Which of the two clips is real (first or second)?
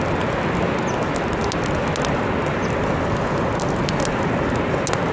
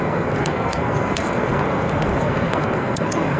first